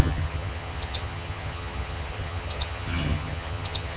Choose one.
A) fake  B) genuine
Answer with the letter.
A